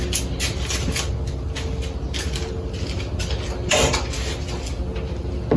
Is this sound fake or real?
real